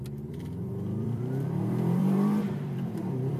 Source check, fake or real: fake